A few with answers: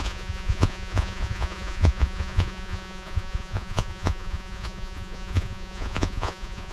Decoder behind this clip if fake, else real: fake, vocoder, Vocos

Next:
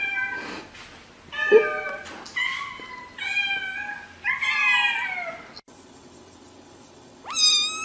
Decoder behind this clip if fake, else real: real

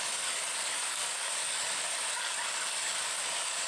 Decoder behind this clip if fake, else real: fake, codec, DAC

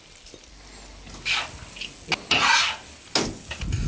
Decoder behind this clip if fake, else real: real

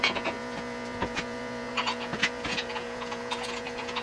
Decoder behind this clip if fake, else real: fake, vocoder, Vocos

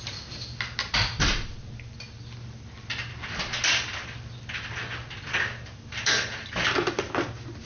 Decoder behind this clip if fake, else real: real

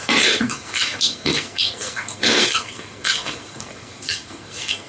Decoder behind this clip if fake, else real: fake, codec, SNAC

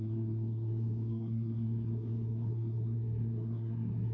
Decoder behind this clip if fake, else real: fake, codec, SNAC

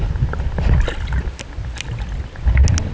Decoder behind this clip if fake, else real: real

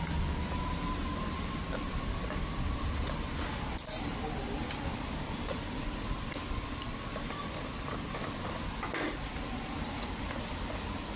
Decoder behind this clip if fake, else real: real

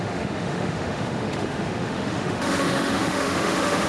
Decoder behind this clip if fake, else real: fake, autoencoder, DAC-VAE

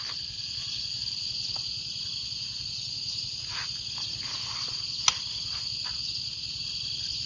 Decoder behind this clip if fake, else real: real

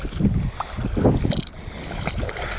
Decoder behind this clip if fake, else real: real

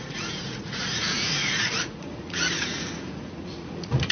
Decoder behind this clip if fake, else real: fake, vocoder, Vocos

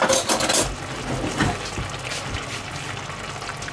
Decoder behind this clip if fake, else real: real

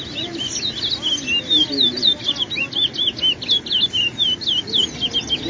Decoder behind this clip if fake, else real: real